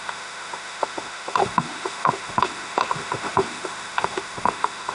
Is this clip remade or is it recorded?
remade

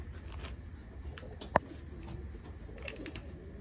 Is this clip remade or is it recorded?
recorded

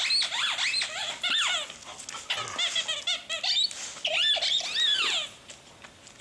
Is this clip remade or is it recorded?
recorded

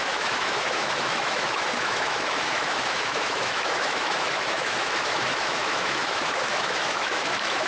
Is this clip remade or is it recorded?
remade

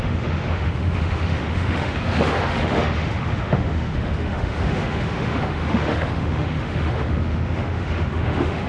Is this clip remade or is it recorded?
remade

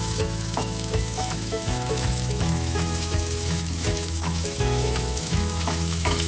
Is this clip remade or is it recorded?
remade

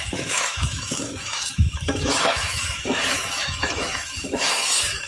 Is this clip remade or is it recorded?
remade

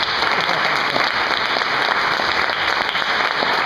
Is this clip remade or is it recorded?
recorded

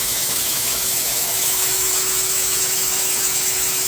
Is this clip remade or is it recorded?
remade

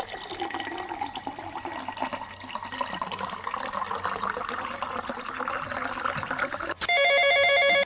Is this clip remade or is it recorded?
recorded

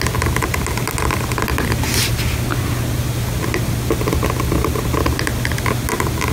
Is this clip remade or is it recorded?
recorded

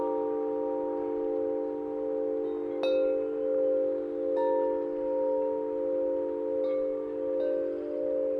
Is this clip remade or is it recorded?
recorded